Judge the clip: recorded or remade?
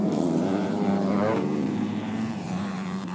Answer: remade